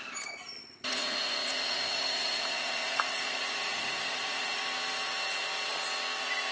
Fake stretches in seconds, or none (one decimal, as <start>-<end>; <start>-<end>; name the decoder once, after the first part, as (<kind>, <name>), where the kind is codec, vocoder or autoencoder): 0.7-4.6 (vocoder, Vocos)